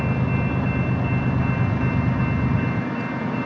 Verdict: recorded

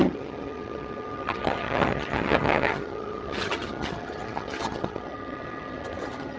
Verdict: remade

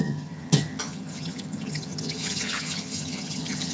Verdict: remade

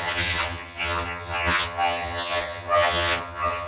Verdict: remade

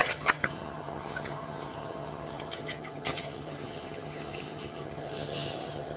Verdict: remade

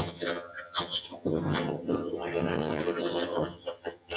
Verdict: remade